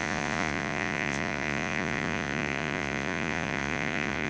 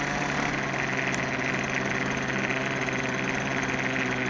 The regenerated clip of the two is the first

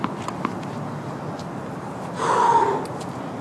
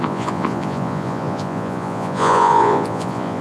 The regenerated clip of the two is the second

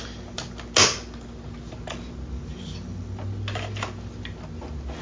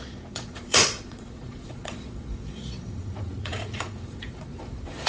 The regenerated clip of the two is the second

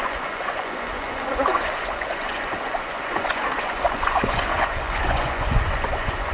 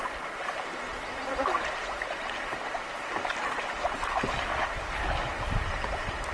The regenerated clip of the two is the first